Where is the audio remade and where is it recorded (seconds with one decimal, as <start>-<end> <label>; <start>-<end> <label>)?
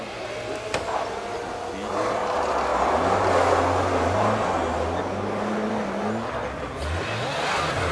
0.0-7.9 recorded